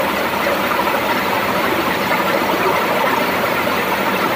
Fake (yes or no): no